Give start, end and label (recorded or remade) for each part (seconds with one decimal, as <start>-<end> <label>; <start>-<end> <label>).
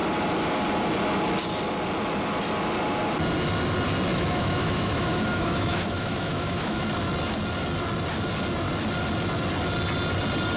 0.0-4.1 recorded; 4.1-6.8 remade; 6.8-10.6 recorded